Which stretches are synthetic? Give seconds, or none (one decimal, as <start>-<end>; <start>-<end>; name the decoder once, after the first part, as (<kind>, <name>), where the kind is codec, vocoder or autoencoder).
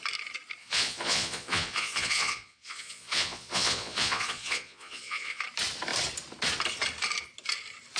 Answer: 0.6-5.4 (vocoder, Vocos)